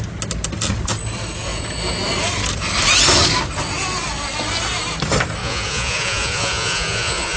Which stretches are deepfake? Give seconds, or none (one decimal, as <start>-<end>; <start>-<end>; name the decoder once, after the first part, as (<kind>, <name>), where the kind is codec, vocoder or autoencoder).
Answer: 5.4-7.4 (vocoder, Vocos)